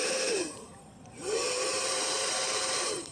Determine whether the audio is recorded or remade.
remade